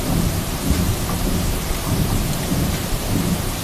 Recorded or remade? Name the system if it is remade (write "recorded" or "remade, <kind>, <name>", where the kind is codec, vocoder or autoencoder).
remade, vocoder, BigVGAN v2